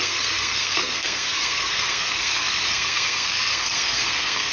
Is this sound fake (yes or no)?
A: yes